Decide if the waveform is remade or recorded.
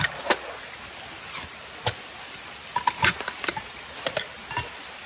recorded